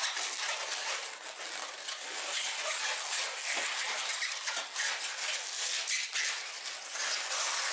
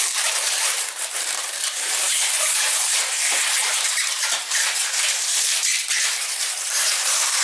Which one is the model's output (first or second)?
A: second